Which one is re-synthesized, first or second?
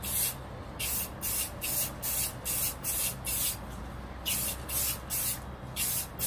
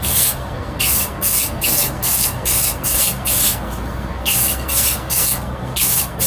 second